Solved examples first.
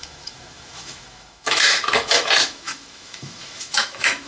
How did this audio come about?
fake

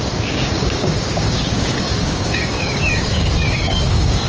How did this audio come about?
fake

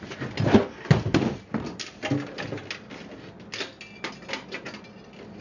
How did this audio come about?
real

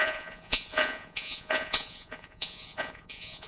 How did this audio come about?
fake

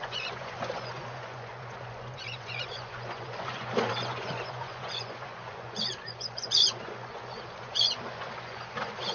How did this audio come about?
fake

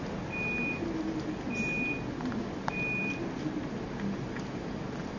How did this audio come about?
real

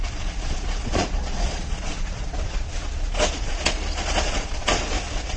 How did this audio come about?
fake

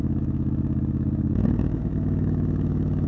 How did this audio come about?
fake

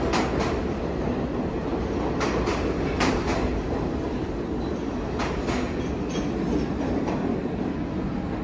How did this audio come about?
real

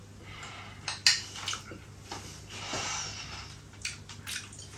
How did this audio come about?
real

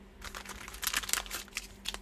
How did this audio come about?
real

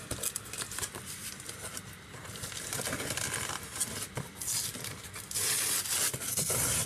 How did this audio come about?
real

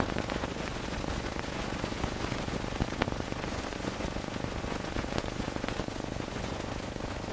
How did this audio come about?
fake